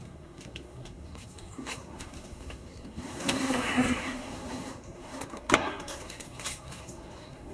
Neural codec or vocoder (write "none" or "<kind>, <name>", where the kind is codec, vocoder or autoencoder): codec, SNAC